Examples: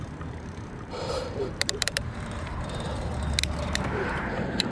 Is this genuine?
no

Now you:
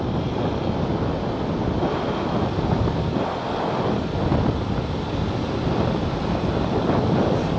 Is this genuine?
yes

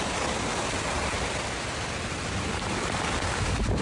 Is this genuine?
yes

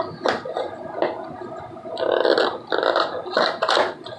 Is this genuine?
yes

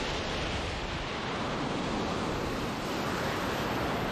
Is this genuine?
yes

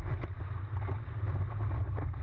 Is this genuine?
yes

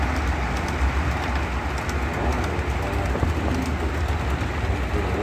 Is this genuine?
yes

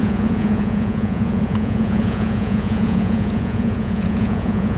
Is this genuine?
no